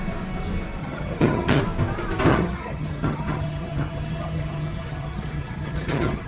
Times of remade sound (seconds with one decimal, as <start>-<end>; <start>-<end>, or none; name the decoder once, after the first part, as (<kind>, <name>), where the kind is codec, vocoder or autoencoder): 0.8-1.6 (vocoder, HiFi-GAN); 2.3-6.3